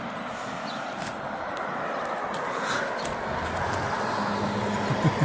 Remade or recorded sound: recorded